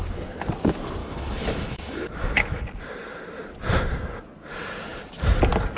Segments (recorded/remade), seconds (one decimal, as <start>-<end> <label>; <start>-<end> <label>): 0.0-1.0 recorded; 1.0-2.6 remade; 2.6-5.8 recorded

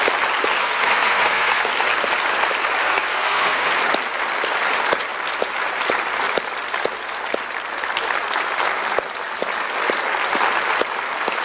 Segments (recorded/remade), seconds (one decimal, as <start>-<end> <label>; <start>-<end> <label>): 0.0-0.6 recorded; 0.6-1.7 remade; 1.7-2.8 recorded; 2.8-3.7 remade; 3.7-11.4 recorded

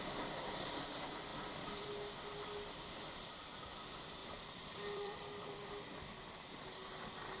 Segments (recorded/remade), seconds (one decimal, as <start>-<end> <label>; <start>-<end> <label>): 0.0-1.3 recorded; 1.3-1.9 remade; 1.9-4.2 recorded; 4.2-5.7 remade; 5.7-7.4 recorded

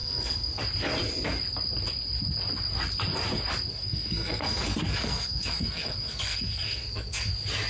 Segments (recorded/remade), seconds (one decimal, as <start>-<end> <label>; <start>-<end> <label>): 0.0-0.6 remade; 0.6-3.7 recorded; 3.7-7.3 remade; 7.3-7.7 recorded

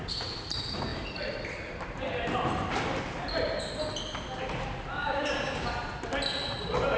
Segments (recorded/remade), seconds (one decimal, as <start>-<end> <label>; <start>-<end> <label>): 0.0-5.0 recorded; 5.0-5.7 remade; 5.7-7.0 recorded

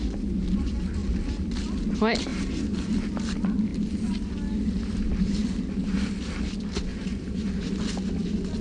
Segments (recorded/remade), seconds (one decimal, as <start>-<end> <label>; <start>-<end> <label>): 0.0-2.3 recorded; 2.3-2.9 remade; 2.9-6.9 recorded; 6.9-7.5 remade; 7.5-8.6 recorded